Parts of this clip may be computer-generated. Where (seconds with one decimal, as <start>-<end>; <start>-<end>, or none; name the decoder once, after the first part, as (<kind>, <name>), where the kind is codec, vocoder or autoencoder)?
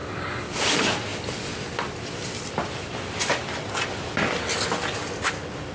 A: none